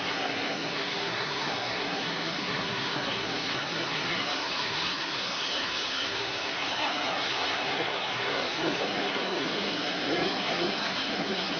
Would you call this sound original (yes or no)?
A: no